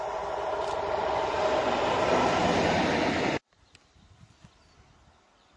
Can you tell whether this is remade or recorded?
recorded